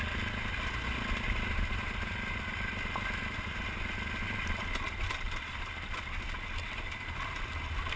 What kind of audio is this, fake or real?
real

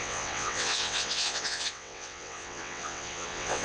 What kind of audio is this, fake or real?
fake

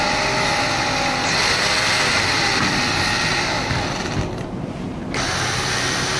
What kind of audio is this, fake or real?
real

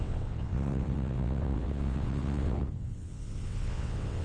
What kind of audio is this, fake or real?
fake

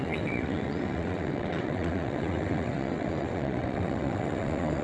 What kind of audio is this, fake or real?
fake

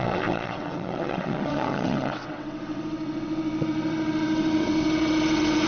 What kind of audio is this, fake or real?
fake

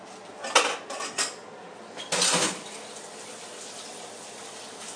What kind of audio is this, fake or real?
real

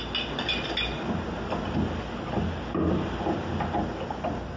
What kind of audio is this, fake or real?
real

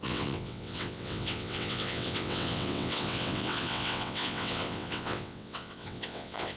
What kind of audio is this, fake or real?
fake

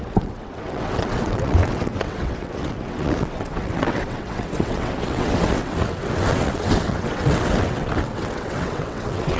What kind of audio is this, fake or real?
fake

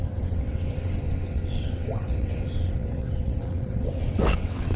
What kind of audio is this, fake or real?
fake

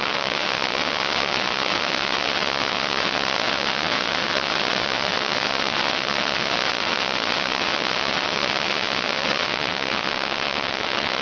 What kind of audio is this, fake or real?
fake